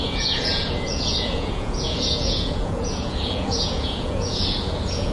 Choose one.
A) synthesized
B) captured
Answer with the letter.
A